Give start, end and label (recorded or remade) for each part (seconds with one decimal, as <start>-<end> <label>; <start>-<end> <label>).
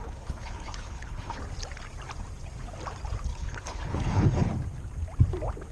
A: 0.0-1.4 remade; 1.4-3.3 recorded; 3.3-4.5 remade; 4.5-5.7 recorded